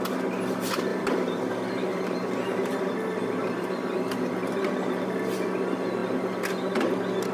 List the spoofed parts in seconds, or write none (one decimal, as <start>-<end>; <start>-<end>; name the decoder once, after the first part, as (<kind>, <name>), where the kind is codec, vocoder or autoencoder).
0.9-1.5 (vocoder, BigVGAN v2); 1.9-5.2